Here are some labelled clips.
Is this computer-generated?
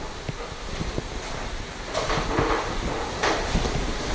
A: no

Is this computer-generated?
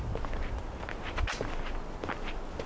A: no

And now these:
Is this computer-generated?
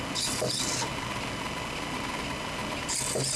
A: no